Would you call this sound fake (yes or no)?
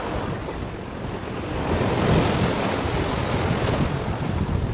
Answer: no